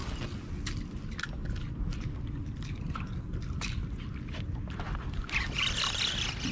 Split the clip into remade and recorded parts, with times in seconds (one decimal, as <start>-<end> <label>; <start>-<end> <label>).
0.0-6.5 recorded